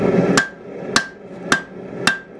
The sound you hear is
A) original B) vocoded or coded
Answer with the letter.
A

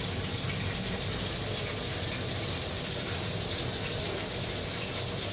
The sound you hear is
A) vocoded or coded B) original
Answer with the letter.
B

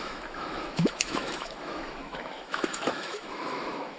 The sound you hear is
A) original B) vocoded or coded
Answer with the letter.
B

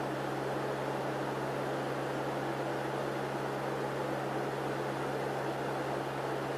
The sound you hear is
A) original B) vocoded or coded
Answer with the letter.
A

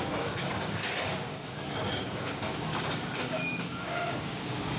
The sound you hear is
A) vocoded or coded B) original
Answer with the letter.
A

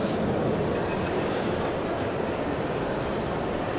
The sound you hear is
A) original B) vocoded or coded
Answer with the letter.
A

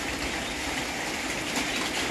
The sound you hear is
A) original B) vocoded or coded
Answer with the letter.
A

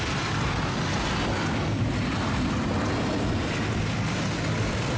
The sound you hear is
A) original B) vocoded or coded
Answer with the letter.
A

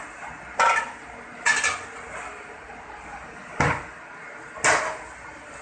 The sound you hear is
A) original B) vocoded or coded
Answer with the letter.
A